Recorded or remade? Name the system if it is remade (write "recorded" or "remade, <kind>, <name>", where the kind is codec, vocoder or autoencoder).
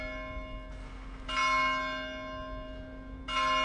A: recorded